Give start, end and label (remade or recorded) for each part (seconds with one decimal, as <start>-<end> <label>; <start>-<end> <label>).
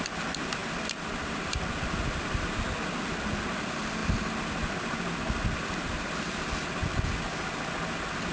0.0-8.3 recorded